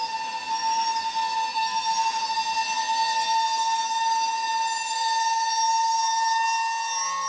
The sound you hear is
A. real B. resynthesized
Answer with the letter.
A